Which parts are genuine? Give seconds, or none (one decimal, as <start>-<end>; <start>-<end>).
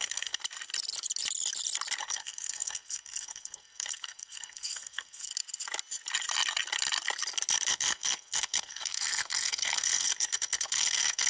0.4-2.0; 5.3-7.7